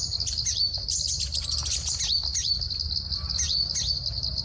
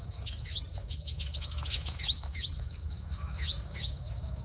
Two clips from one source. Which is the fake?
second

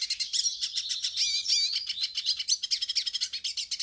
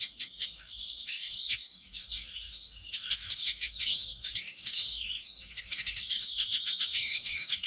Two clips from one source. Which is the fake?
second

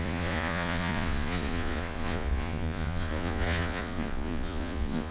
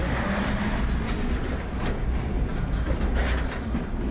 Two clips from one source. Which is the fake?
first